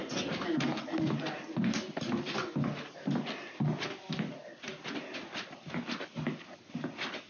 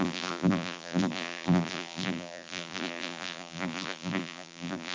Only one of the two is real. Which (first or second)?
first